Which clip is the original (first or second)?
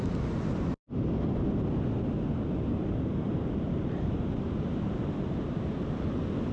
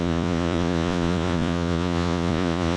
first